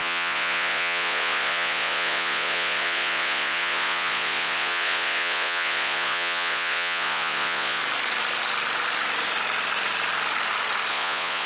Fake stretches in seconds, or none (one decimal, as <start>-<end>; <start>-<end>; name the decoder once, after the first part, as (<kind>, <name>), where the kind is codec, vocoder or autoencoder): 0.0-7.8 (vocoder, Vocos); 10.9-11.5